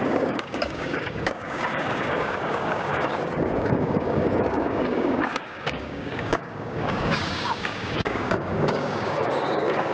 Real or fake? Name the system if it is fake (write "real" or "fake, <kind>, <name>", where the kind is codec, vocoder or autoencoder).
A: fake, codec, DAC